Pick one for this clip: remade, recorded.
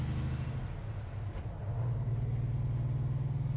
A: recorded